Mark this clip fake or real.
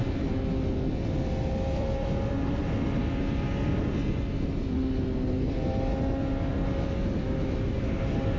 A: real